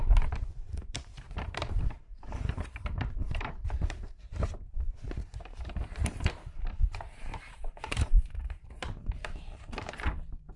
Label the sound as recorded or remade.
remade